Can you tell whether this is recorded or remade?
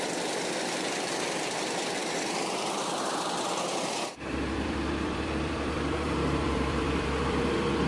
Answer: remade